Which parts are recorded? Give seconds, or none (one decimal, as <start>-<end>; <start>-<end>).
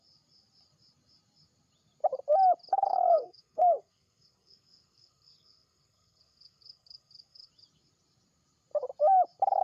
0.0-2.7; 7.5-9.6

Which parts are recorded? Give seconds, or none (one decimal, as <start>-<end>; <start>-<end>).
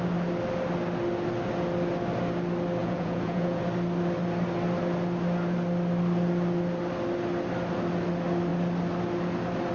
0.0-2.8; 3.6-9.7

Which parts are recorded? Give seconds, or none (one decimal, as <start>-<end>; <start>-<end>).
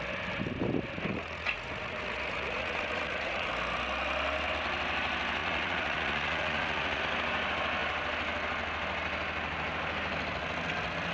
0.0-1.1; 3.5-5.4; 7.0-11.1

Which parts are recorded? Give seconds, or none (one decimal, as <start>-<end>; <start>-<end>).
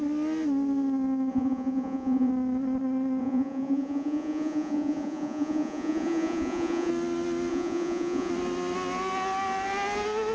0.0-1.3; 2.3-3.2; 6.9-7.5; 8.3-10.3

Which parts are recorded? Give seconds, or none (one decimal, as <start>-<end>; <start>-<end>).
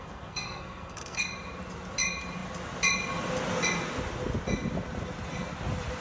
1.3-6.0